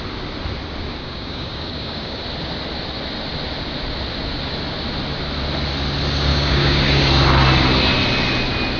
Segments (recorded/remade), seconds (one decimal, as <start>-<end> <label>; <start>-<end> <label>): 0.0-1.0 recorded; 1.0-2.2 remade; 2.2-6.3 recorded; 6.3-7.1 remade; 7.1-8.8 recorded